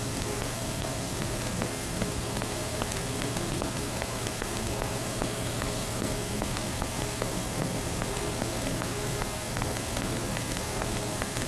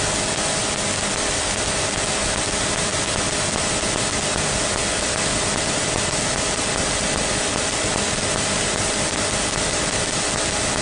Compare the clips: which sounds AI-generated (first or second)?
first